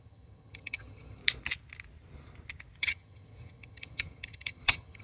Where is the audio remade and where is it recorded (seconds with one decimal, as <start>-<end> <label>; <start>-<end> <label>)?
0.0-1.2 remade; 1.2-2.8 recorded; 2.8-5.0 remade